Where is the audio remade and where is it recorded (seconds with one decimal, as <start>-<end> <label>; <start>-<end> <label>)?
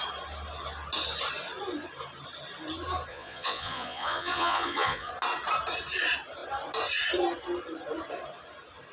0.0-3.1 recorded; 3.1-5.1 remade; 5.1-8.9 recorded